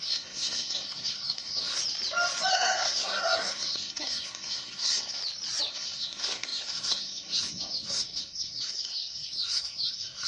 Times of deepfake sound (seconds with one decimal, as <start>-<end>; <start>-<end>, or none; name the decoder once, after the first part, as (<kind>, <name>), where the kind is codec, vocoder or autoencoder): 0.0-1.8 (codec, SNAC); 2.5-5.2; 5.7-10.3